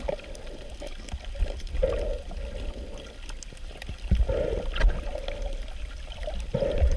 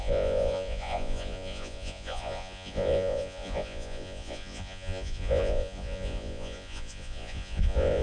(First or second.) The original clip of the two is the first